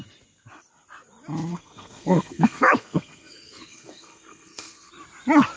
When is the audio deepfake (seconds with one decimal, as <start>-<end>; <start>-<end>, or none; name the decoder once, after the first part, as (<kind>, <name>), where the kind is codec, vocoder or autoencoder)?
1.5-4.9 (codec, SNAC)